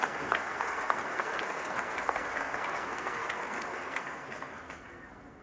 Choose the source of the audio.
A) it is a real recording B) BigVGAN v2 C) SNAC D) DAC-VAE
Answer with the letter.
C